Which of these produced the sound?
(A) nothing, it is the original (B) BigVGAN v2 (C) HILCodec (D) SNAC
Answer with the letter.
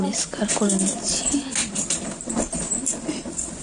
A